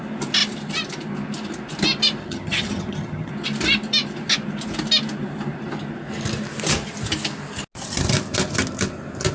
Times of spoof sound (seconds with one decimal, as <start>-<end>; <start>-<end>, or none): 2.2-3.3